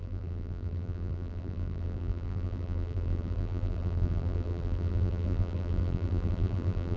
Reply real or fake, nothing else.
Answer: fake